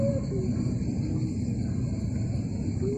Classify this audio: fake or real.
real